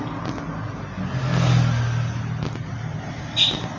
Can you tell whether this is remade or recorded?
recorded